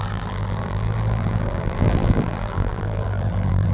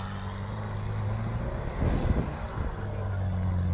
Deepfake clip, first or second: first